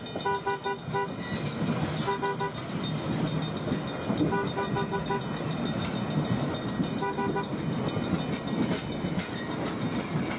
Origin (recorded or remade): recorded